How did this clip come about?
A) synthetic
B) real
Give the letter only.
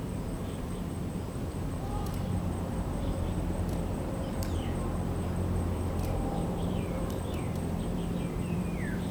A